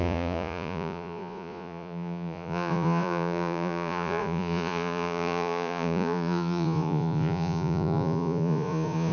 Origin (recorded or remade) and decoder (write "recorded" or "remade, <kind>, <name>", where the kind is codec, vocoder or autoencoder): remade, vocoder, Vocos